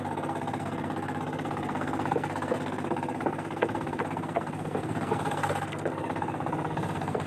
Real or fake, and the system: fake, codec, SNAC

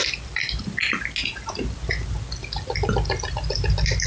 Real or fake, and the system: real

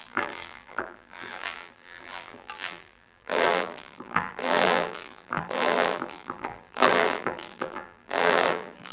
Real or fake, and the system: fake, vocoder, BigVGAN v2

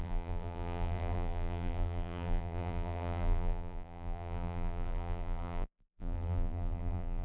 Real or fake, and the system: fake, vocoder, BigVGAN v2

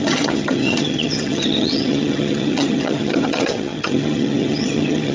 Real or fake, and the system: fake, vocoder, HiFi-GAN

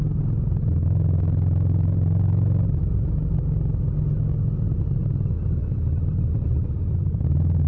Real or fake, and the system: real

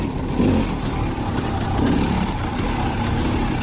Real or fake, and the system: real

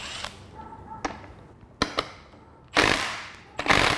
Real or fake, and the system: real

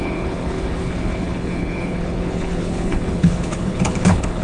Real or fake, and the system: fake, codec, HILCodec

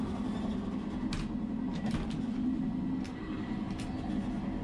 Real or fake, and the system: real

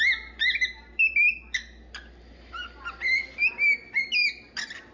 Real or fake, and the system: real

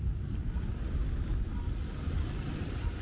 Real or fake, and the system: real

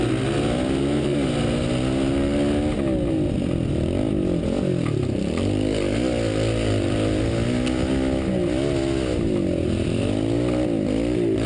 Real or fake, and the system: real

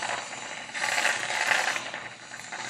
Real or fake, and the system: real